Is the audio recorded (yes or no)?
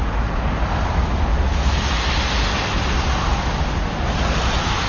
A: yes